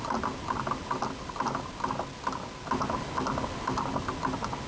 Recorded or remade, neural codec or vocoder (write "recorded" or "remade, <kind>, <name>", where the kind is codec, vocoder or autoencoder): recorded